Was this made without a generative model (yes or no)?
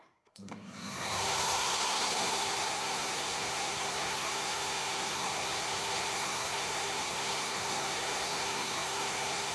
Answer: no